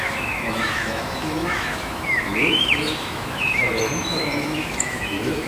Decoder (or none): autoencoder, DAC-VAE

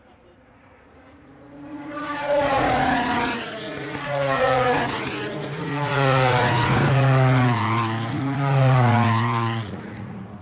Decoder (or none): vocoder, Vocos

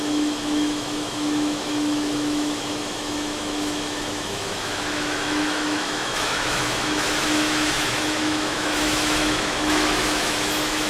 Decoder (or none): autoencoder, DAC-VAE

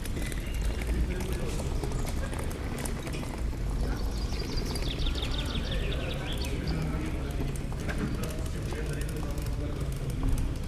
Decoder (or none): none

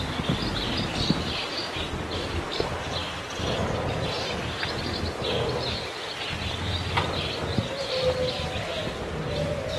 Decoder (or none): none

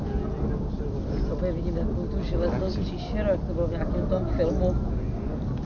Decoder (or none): none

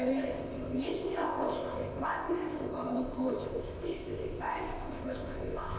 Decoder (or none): codec, ZipCodec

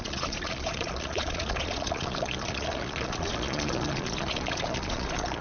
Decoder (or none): vocoder, Vocos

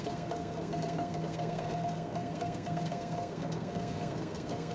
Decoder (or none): codec, SNAC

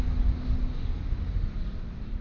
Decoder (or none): none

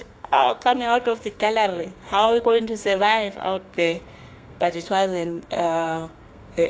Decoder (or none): codec, SNAC